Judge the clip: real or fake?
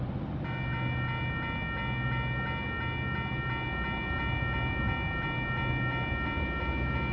real